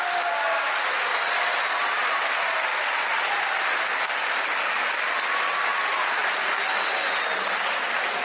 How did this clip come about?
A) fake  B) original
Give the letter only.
B